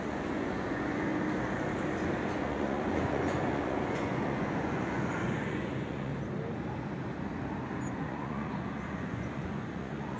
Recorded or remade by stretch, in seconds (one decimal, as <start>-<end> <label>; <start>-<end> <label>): 0.0-1.1 remade; 1.1-2.4 recorded; 2.4-6.1 remade; 6.1-8.0 recorded; 8.0-10.2 remade